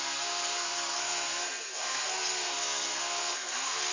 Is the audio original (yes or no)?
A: no